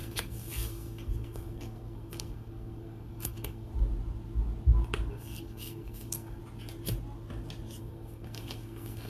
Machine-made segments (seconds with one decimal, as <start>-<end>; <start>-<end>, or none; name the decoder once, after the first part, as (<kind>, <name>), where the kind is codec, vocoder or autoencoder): 0.0-3.7 (codec, SNAC); 5.1-6.4; 7.8-9.1